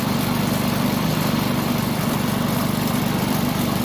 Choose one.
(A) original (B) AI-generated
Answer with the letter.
B